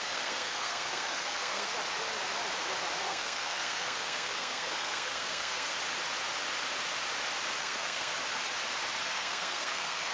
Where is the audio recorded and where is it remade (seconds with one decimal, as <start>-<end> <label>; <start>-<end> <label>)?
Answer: 0.0-1.7 remade; 1.7-3.0 recorded; 3.0-5.7 remade; 5.7-7.6 recorded; 7.6-8.1 remade; 8.1-9.0 recorded; 9.0-10.1 remade